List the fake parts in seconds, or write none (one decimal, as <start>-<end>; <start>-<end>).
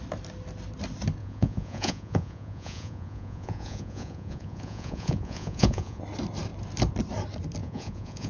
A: 1.2-6.0; 7.6-8.3